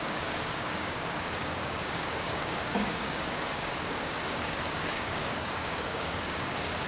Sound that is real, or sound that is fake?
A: fake